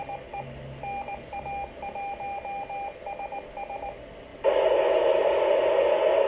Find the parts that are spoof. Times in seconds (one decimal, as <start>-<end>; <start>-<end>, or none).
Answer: none